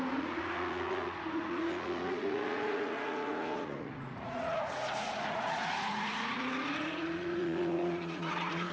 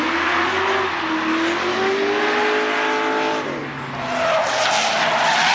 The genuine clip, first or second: second